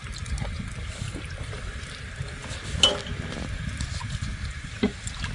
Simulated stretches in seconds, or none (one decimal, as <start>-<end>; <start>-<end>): none